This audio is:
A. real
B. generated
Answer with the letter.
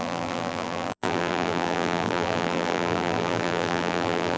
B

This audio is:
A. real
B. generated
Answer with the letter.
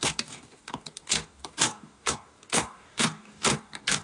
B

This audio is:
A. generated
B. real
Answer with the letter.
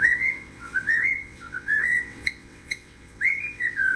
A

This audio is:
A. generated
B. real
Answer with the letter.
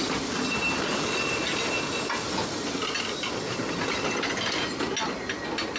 B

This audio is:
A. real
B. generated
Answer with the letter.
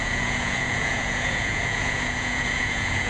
B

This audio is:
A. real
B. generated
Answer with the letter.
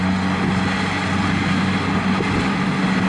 A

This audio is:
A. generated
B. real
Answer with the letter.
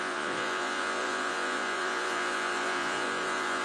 A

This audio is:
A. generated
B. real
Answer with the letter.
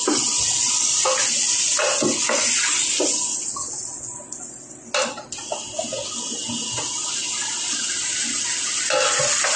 B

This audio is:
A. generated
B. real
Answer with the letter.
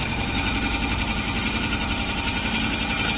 B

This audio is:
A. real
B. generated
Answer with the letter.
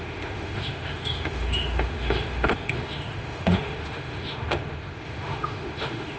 B